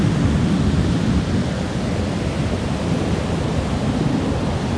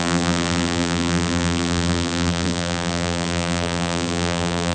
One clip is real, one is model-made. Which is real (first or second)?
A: first